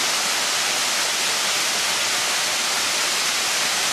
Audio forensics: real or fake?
real